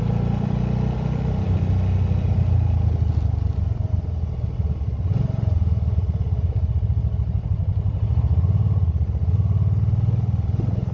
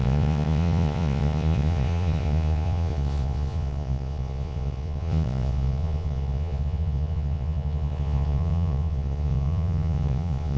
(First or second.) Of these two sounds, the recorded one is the first